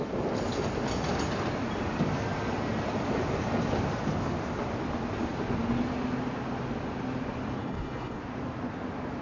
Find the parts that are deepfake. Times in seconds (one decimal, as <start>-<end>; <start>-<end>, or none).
7.6-8.2